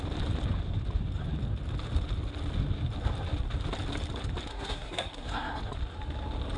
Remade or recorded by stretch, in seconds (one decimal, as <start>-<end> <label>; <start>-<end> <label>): 0.0-4.5 recorded; 4.5-5.6 remade; 5.6-6.6 recorded

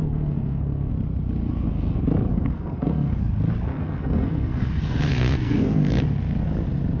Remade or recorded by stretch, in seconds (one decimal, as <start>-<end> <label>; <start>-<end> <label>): 0.0-0.9 remade; 0.9-2.3 recorded; 2.3-3.2 remade; 3.2-3.7 recorded; 3.7-6.0 remade; 6.0-7.0 recorded

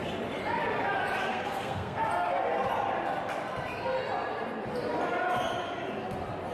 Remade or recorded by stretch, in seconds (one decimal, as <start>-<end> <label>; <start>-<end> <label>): 0.0-1.3 recorded; 1.3-2.0 remade; 2.0-6.5 recorded

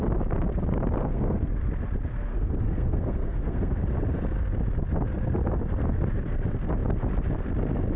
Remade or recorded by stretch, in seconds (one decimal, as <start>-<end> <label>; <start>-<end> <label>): 0.0-1.0 recorded; 1.0-1.6 remade; 1.6-2.3 recorded; 2.3-3.8 remade; 3.8-8.0 recorded